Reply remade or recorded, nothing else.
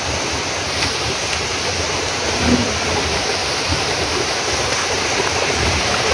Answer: recorded